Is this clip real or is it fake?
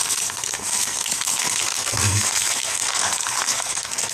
fake